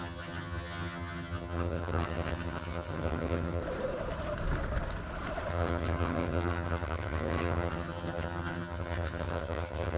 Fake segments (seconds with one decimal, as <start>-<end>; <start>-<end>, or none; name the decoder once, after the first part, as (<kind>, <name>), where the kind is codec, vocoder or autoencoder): 0.0-3.6 (vocoder, HiFi-GAN); 5.5-10.0